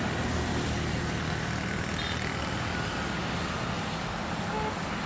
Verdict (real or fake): real